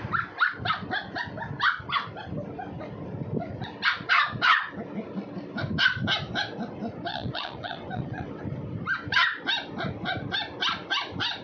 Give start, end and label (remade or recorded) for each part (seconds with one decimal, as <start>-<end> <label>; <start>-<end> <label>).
0.0-7.1 recorded; 7.1-8.4 remade; 8.4-11.4 recorded